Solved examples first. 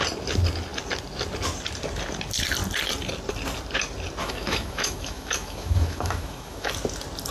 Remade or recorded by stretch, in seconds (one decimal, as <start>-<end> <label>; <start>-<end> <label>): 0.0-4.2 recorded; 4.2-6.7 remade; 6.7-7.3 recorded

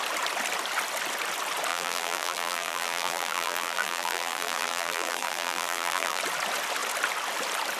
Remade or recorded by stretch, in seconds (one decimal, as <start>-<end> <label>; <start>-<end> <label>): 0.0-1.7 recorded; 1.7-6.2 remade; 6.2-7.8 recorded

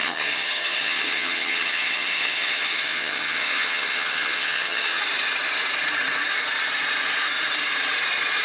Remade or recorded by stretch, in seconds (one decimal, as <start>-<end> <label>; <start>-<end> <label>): 0.0-5.0 remade; 5.0-8.4 recorded

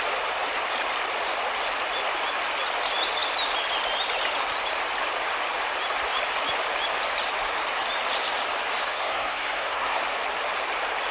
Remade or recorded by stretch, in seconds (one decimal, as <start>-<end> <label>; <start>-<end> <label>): 0.0-8.8 recorded; 8.8-10.0 remade; 10.0-11.1 recorded

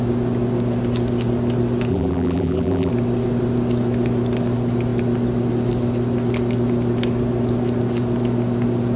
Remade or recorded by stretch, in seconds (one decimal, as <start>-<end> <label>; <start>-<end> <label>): 0.0-1.9 recorded; 1.9-2.9 remade; 2.9-9.0 recorded

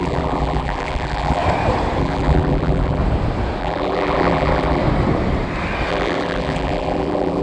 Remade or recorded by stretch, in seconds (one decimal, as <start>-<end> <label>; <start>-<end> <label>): 0.0-1.4 remade; 1.4-2.0 recorded; 2.0-3.0 remade; 3.0-3.6 recorded; 3.6-4.8 remade; 4.8-5.9 recorded; 5.9-7.4 remade